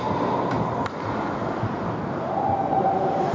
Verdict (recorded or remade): recorded